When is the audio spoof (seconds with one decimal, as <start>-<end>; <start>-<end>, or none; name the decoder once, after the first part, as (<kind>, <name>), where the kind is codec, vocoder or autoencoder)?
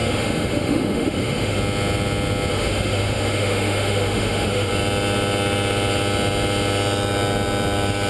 0.0-1.6 (autoencoder, DAC-VAE); 2.5-4.7